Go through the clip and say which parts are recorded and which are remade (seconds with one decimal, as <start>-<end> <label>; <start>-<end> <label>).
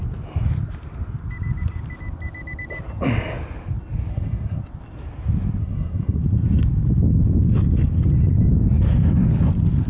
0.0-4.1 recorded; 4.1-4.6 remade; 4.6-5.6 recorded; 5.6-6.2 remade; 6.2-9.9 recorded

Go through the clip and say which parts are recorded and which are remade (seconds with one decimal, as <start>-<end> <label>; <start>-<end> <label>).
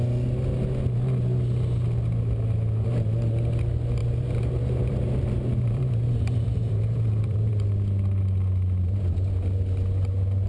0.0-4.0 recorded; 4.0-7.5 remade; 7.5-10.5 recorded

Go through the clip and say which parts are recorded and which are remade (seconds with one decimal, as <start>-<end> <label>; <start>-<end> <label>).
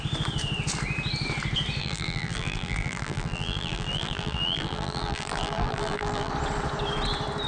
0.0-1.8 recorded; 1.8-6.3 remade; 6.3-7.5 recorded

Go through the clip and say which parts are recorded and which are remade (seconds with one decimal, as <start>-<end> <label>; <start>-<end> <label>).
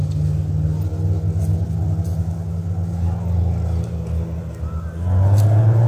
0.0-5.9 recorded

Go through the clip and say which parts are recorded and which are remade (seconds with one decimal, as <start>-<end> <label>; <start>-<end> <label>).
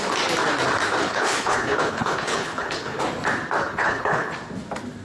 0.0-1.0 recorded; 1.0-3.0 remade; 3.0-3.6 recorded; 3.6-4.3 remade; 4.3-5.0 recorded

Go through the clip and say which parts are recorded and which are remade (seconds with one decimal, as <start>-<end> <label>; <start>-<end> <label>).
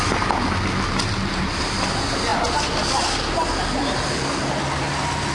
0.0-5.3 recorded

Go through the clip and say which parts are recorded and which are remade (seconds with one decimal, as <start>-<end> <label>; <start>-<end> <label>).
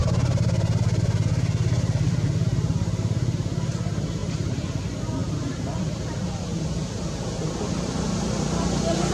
0.0-1.0 remade; 1.0-4.2 recorded; 4.2-4.8 remade; 4.8-5.2 recorded; 5.2-6.2 remade; 6.2-9.1 recorded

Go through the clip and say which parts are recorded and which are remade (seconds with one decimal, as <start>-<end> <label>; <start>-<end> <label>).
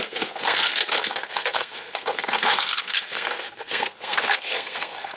0.0-5.2 remade